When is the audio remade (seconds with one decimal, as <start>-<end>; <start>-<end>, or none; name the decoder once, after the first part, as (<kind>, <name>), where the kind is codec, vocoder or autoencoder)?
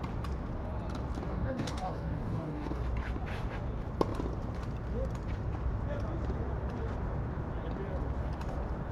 1.3-2.8 (codec, DAC)